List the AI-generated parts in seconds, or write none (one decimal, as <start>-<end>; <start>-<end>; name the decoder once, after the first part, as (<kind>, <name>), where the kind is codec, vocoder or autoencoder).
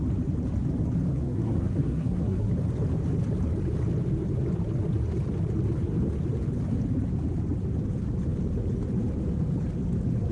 1.1-2.5 (codec, SNAC)